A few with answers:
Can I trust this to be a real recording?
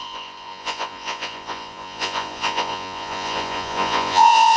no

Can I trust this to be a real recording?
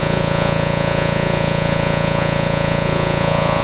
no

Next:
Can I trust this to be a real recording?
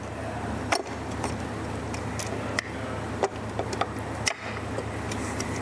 yes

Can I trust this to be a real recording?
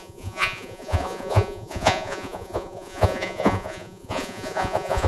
no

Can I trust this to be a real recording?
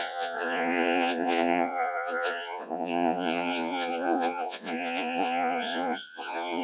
no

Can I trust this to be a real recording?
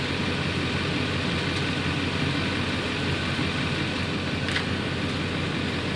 yes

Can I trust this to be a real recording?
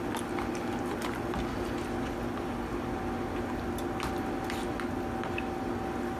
yes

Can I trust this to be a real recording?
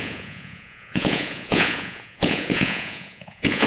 no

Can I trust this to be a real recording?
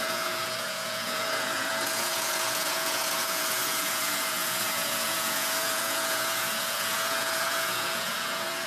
no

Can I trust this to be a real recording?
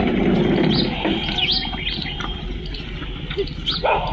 yes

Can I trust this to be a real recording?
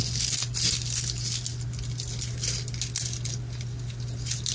yes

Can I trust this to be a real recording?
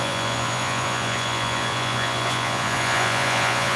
no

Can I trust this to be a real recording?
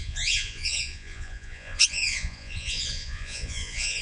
no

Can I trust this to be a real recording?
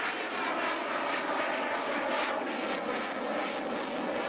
yes